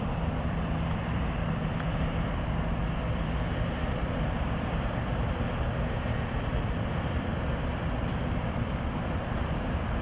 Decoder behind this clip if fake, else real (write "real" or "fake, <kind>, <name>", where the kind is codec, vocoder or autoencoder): fake, vocoder, BigVGAN v2